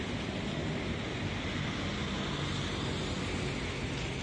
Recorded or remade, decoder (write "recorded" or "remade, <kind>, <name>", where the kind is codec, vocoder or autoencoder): recorded